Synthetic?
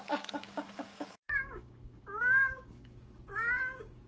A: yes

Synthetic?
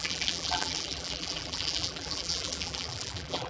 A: yes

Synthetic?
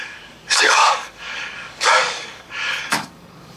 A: yes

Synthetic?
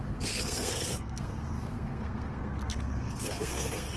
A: yes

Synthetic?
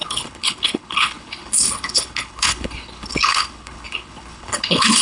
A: yes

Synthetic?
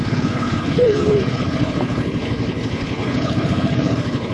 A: yes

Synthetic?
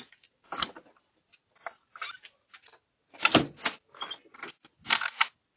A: no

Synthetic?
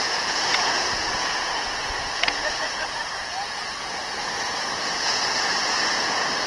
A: yes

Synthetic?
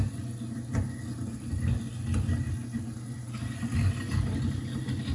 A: no